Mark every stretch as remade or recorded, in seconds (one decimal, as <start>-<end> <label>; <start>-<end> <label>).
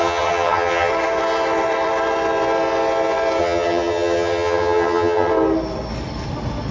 0.0-0.9 remade; 0.9-3.4 recorded; 3.4-5.3 remade; 5.3-6.7 recorded